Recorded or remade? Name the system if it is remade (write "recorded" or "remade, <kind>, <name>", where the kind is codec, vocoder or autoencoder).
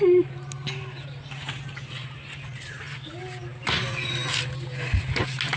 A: recorded